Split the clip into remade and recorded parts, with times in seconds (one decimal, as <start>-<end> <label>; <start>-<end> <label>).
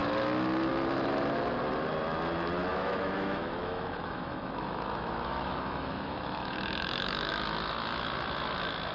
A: 0.0-2.7 recorded; 2.7-7.3 remade; 7.3-8.9 recorded